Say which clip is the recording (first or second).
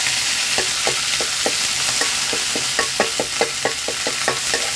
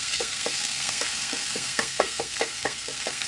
first